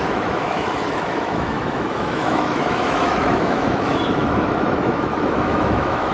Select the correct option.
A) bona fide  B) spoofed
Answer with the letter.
B